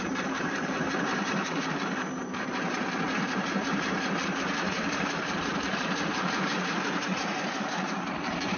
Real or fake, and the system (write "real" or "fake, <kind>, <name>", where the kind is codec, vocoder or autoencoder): fake, vocoder, BigVGAN v2